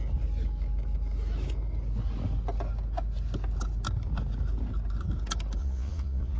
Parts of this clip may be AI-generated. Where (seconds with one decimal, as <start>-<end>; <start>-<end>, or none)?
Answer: 5.6-6.4